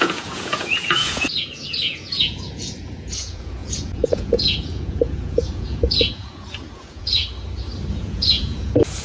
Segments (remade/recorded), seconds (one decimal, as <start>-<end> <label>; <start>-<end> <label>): 0.0-7.2 remade; 7.2-7.9 recorded; 7.9-9.0 remade